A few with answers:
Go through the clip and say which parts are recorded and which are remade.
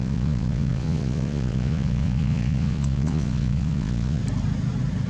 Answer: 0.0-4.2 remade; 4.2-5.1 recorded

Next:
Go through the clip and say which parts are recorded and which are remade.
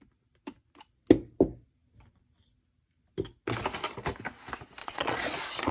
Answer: 0.0-4.8 recorded; 4.8-5.7 remade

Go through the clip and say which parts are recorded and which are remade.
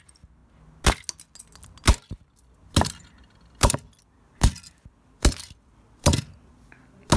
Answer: 0.0-7.2 recorded